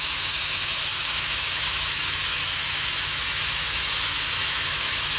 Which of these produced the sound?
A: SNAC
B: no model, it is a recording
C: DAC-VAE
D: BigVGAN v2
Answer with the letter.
C